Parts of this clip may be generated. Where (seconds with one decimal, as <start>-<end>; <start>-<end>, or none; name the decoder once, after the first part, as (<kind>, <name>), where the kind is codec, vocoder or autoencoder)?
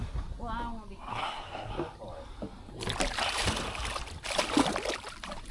1.1-1.7 (codec, SNAC)